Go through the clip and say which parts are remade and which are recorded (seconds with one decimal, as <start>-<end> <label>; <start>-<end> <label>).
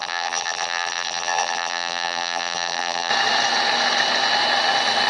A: 0.0-3.1 remade; 3.1-5.1 recorded